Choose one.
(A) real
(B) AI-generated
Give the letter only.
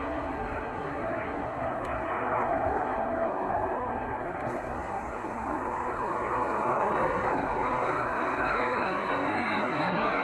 B